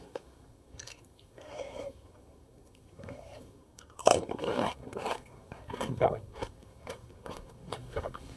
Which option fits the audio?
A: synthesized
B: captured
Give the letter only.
A